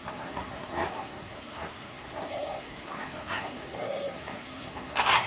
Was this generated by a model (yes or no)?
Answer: yes